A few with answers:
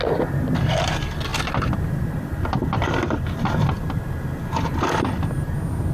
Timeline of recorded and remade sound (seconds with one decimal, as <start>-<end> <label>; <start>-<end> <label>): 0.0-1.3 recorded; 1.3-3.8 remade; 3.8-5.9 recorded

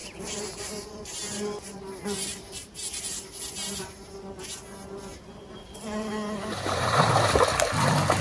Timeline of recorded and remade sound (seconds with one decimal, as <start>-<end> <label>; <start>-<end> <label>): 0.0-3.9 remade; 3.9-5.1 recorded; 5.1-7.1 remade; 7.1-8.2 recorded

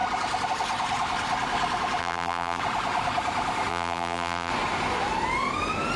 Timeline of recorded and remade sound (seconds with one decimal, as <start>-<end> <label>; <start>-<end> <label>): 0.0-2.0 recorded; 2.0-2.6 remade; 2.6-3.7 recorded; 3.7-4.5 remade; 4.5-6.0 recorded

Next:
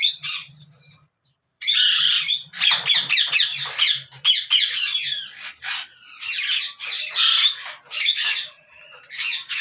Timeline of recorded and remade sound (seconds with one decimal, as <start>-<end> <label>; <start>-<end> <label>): 0.0-0.4 recorded; 0.4-4.4 remade; 4.4-7.2 recorded; 7.2-9.6 remade